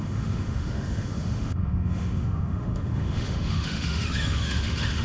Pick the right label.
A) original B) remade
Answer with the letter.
B